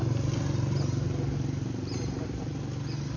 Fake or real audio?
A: real